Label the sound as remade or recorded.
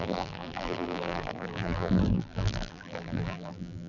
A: remade